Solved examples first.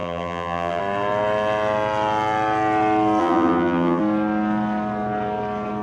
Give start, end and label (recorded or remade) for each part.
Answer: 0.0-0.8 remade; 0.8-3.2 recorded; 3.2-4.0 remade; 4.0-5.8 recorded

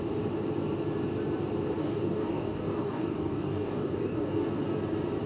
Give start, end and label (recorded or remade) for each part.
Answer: 0.0-1.8 recorded; 1.8-4.5 remade; 4.5-5.3 recorded